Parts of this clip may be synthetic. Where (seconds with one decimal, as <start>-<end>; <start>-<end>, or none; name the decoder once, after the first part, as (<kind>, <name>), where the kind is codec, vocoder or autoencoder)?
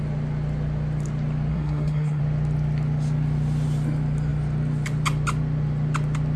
1.5-2.2 (codec, SNAC)